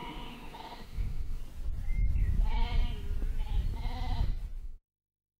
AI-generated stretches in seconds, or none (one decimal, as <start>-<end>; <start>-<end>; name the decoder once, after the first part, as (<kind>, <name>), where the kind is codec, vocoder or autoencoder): 0.0-1.4 (autoencoder, DAC-VAE); 4.6-5.4